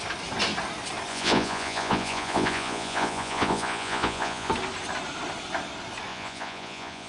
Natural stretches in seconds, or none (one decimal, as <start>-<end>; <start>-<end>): 0.0-1.1; 4.5-6.1